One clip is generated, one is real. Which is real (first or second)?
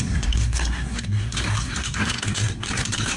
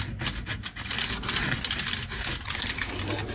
second